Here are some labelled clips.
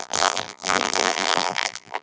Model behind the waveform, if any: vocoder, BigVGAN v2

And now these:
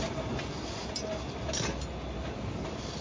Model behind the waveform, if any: none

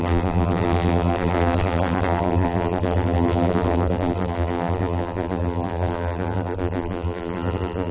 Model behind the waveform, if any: vocoder, BigVGAN v2